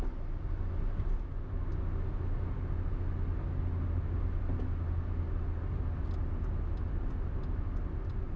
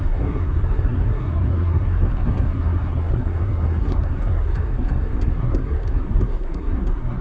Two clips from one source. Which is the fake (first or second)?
second